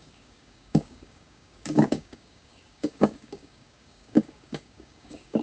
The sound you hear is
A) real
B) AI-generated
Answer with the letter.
B